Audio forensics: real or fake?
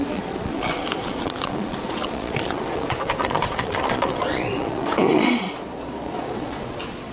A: fake